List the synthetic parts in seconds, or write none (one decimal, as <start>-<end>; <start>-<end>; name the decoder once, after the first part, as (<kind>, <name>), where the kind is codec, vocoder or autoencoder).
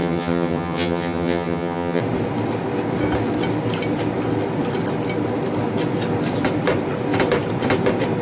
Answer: 0.0-2.0 (vocoder, HiFi-GAN)